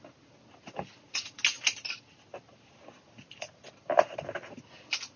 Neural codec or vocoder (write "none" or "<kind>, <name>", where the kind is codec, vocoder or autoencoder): none